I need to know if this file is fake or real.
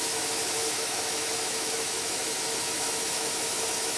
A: fake